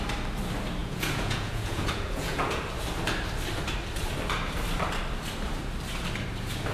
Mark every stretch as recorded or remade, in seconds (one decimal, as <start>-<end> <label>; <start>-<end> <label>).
0.0-0.8 recorded; 0.8-2.6 remade; 2.6-6.7 recorded

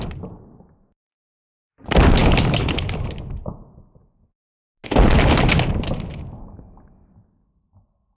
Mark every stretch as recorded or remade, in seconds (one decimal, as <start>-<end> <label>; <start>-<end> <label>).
0.0-8.2 recorded

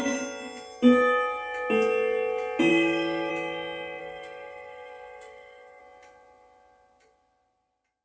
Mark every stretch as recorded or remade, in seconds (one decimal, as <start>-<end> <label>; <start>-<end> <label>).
0.0-2.7 recorded; 2.7-3.3 remade; 3.3-4.0 recorded; 4.0-5.8 remade; 5.8-8.0 recorded